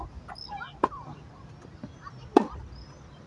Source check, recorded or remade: recorded